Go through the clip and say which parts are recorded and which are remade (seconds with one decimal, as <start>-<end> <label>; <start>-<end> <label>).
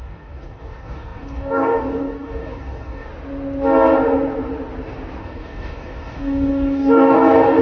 0.0-3.1 remade; 3.1-5.2 recorded; 5.2-7.6 remade